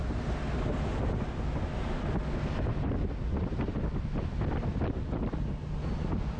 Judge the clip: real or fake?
real